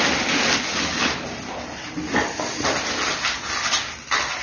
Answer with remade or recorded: recorded